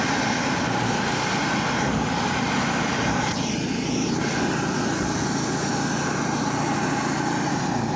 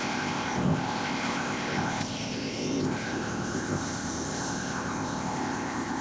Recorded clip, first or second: first